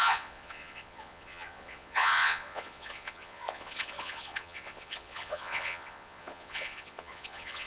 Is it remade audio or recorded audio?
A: remade